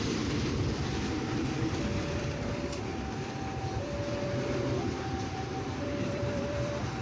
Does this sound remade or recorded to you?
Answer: remade